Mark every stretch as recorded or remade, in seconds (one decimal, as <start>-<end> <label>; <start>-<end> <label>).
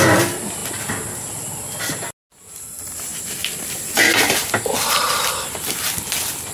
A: 0.0-6.5 recorded